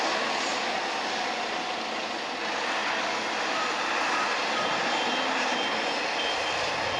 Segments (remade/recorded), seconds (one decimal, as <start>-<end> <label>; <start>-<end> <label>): 0.0-7.0 recorded

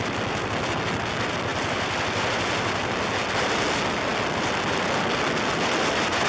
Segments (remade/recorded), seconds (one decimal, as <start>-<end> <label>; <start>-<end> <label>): 0.0-1.5 recorded; 1.5-2.2 remade; 2.2-6.3 recorded

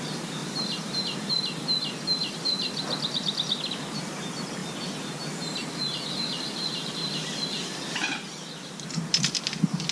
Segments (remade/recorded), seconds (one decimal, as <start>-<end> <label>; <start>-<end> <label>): 0.0-0.4 recorded; 0.4-1.0 remade; 1.0-9.9 recorded

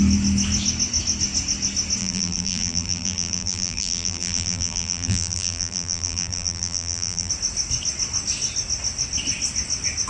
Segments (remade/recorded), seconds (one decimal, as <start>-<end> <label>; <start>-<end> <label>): 0.0-2.0 recorded; 2.0-7.3 remade; 7.3-10.1 recorded